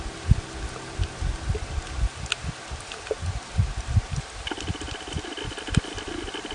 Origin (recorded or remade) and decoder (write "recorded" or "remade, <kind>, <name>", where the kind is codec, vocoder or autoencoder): recorded